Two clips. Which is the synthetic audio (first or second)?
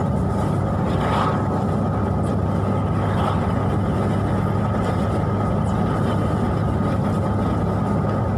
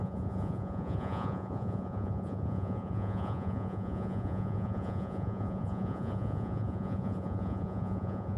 second